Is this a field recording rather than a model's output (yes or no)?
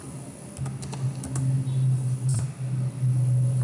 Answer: yes